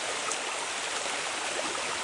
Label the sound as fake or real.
real